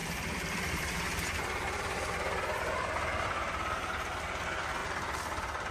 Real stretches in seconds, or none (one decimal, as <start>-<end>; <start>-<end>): 0.7-4.8